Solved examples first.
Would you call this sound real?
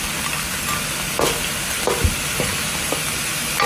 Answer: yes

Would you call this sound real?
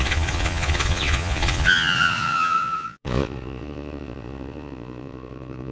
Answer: no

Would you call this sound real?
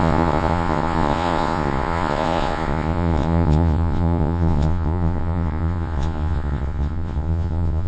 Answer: no